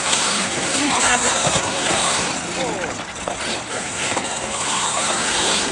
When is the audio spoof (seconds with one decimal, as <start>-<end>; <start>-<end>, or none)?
0.0-2.3; 3.7-5.7